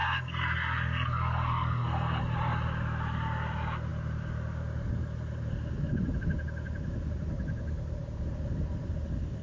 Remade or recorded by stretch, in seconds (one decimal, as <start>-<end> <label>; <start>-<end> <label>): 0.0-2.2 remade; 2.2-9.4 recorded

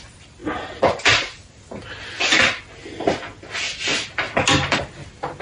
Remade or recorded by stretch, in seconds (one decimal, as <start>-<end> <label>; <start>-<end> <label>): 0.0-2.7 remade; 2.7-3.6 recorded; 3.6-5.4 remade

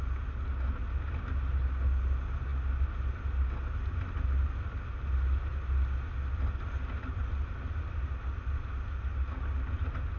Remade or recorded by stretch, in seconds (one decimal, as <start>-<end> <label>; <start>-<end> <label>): 0.0-10.2 recorded

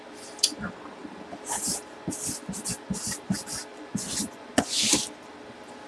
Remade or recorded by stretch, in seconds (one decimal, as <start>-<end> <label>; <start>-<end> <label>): 0.0-3.7 recorded; 3.7-4.8 remade; 4.8-5.9 recorded

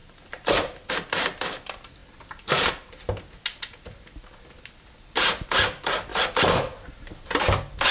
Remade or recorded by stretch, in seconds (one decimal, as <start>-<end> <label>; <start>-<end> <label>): 0.0-0.9 remade; 0.9-6.1 recorded; 6.1-7.4 remade; 7.4-7.9 recorded

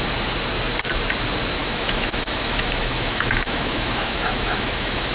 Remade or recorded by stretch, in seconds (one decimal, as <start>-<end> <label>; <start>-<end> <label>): 0.0-1.6 recorded; 1.6-5.1 remade